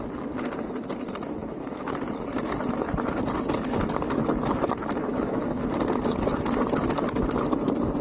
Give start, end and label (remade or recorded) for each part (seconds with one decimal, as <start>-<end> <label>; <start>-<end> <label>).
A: 0.0-1.4 recorded; 1.4-1.9 remade; 1.9-5.1 recorded; 5.1-5.7 remade; 5.7-8.0 recorded